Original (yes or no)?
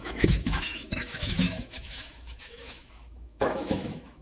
no